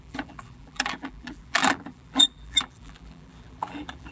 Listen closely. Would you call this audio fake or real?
fake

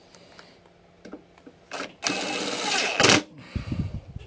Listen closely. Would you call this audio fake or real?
real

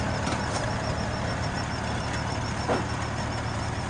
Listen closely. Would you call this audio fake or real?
real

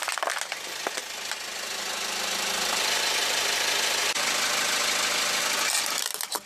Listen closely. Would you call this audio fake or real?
real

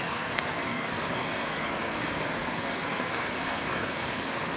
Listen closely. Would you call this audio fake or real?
fake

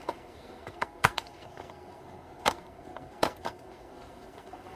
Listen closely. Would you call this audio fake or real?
fake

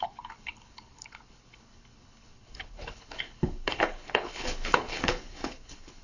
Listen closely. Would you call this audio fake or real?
fake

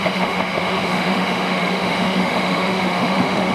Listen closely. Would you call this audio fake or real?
fake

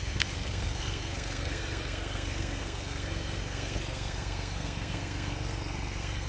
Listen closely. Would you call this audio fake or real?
fake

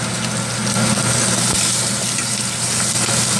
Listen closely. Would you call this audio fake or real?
real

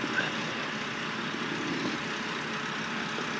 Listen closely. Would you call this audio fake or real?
real